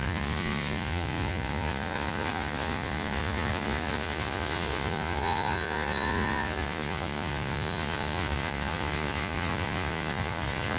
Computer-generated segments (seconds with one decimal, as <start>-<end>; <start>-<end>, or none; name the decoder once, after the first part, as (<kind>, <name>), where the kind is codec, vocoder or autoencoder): 0.0-10.8 (vocoder, Vocos)